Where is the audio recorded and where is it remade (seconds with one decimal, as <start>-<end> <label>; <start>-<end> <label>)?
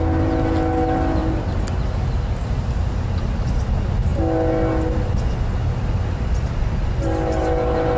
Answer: 0.0-8.0 recorded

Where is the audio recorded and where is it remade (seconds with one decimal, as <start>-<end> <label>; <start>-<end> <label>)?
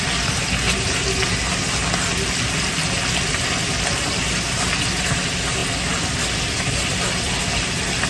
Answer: 0.0-8.1 recorded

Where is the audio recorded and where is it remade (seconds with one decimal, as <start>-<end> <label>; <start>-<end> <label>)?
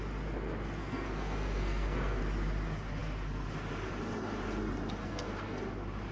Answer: 0.0-0.8 recorded; 0.8-2.2 remade; 2.2-5.0 recorded; 5.0-5.6 remade; 5.6-6.1 recorded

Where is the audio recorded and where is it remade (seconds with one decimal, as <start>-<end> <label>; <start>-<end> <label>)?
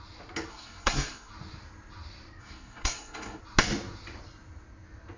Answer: 0.0-0.5 recorded; 0.5-1.3 remade; 1.3-2.4 recorded; 2.4-3.4 remade; 3.4-5.2 recorded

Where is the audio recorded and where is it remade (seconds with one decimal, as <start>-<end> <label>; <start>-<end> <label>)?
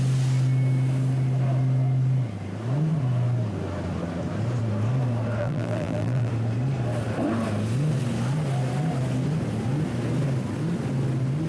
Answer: 0.0-5.4 recorded; 5.4-6.3 remade; 6.3-11.5 recorded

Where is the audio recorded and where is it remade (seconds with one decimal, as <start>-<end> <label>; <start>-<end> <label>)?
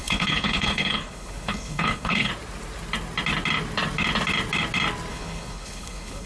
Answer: 0.0-2.3 remade; 2.3-5.1 recorded; 5.1-6.3 remade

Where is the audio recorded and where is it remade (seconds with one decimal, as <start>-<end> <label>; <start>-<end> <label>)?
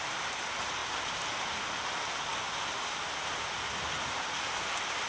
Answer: 0.0-5.1 recorded